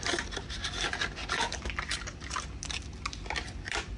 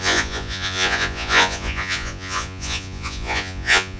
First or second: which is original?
first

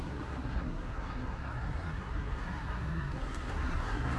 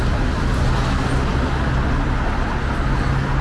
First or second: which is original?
second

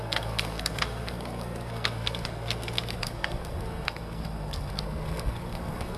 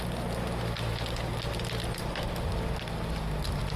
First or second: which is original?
second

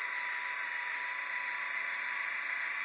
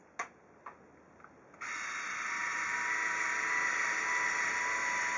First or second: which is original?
second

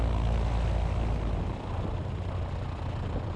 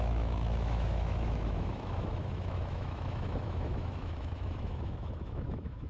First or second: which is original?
first